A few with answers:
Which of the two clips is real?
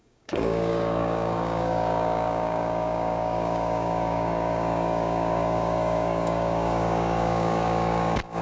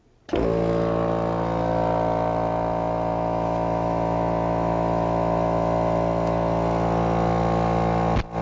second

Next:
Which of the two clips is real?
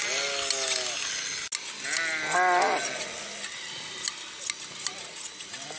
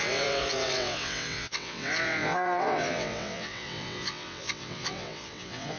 first